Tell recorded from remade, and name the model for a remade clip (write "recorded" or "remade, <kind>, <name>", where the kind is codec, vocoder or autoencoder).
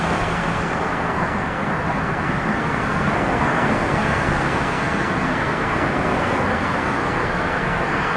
remade, codec, SNAC